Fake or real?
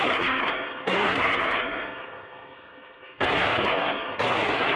fake